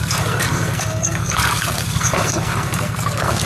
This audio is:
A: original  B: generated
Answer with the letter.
B